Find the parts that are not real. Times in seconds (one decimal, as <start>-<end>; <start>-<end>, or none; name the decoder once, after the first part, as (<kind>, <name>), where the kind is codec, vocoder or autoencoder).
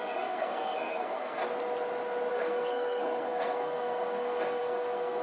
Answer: 0.0-1.4 (codec, SNAC); 2.3-5.2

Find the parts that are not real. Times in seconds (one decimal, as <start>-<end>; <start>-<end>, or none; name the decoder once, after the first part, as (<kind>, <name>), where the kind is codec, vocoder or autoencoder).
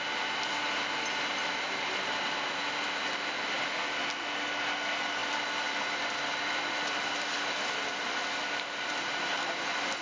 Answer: 1.4-2.6 (vocoder, BigVGAN v2); 5.2-7.5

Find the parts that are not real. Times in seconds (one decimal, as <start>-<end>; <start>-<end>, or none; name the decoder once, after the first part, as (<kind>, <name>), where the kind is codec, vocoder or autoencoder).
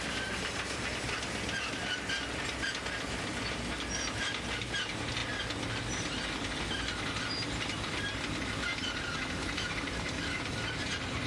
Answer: none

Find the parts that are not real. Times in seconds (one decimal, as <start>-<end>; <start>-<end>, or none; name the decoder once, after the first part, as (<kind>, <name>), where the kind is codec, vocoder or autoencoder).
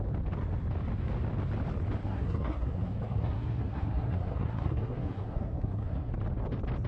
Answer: 2.0-6.1 (codec, SNAC)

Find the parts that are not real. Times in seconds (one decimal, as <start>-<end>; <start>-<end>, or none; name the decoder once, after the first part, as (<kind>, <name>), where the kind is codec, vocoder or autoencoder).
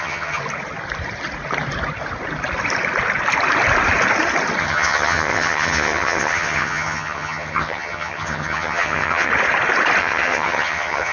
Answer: 0.0-0.4 (vocoder, HiFi-GAN); 4.6-9.3; 10.0-11.1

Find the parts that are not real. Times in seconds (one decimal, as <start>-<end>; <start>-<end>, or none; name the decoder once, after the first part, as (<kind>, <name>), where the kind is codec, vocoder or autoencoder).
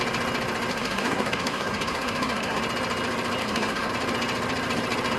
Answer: 0.7-2.6 (codec, SNAC); 3.4-3.9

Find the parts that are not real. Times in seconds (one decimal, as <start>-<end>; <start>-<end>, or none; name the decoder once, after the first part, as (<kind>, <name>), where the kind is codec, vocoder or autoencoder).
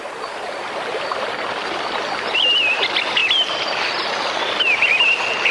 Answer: none